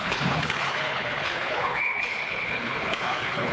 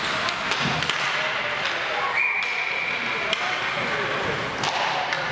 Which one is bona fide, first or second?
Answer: second